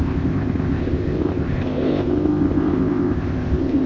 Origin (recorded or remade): remade